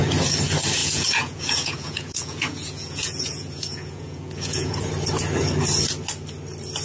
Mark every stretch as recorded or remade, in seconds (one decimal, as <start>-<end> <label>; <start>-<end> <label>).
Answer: 0.0-0.8 recorded; 0.8-4.9 remade; 4.9-6.8 recorded